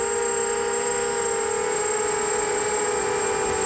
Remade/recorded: recorded